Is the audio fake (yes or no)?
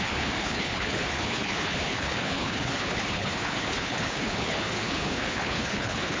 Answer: yes